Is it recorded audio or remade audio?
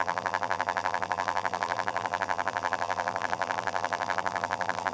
remade